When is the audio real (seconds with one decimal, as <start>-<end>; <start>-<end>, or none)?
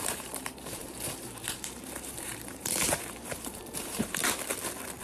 4.2-5.0